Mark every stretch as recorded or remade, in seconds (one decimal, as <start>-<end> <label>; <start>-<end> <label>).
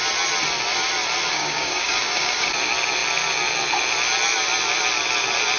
0.0-1.3 recorded; 1.3-2.5 remade; 2.5-5.6 recorded